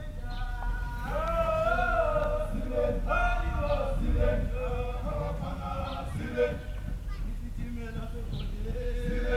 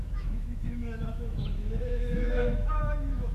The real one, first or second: first